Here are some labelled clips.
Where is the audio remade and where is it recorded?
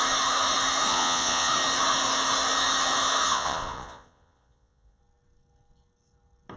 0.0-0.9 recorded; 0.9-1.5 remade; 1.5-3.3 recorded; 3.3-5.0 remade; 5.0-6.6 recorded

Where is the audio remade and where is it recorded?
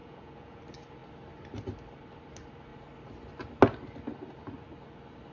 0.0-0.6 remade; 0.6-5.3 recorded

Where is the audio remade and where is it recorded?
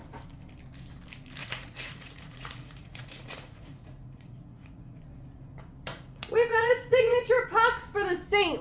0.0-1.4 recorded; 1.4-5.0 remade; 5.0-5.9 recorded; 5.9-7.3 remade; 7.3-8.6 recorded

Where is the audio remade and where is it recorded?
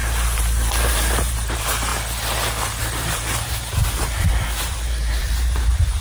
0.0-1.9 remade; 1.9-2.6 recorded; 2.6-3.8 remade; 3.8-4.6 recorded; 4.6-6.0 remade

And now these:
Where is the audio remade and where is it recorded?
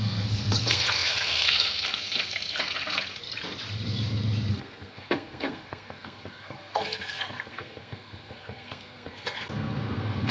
0.0-3.2 remade; 3.2-4.5 recorded; 4.5-10.3 remade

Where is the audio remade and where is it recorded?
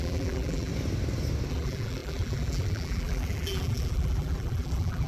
0.0-0.7 remade; 0.7-1.5 recorded; 1.5-5.1 remade